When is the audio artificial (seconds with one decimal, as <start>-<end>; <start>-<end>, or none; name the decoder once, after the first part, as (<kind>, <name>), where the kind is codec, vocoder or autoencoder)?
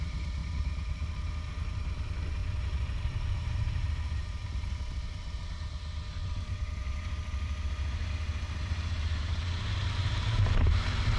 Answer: 0.4-1.3 (vocoder, BigVGAN v2); 2.4-4.5; 6.2-11.2